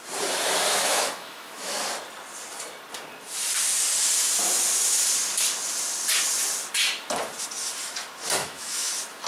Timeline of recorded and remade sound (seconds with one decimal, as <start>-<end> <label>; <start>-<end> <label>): 0.0-0.8 recorded; 0.8-1.8 remade; 1.8-8.4 recorded; 8.4-8.9 remade; 8.9-9.3 recorded